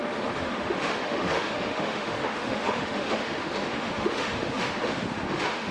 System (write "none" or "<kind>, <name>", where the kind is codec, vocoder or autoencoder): autoencoder, DAC-VAE